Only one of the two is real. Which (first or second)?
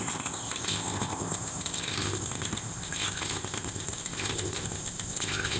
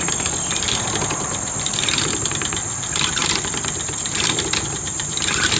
second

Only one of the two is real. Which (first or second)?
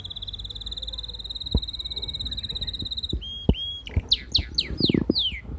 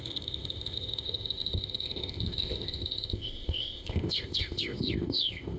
first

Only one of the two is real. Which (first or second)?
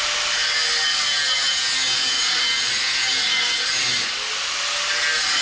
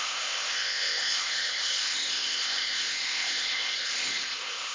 first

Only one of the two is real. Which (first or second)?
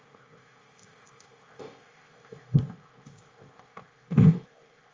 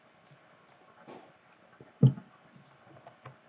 second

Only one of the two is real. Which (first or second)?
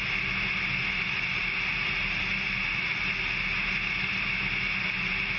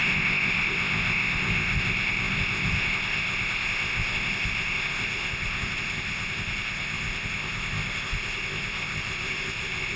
first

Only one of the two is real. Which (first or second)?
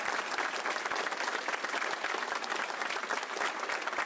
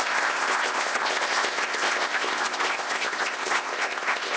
first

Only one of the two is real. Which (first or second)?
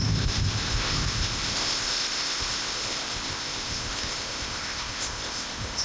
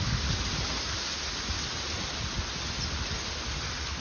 second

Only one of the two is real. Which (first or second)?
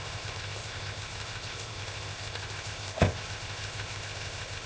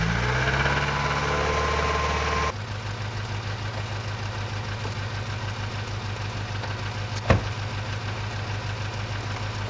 second